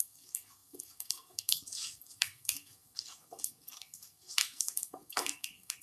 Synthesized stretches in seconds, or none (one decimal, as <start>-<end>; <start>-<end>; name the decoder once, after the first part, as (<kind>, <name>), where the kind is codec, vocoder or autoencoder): 0.0-5.8 (codec, SNAC)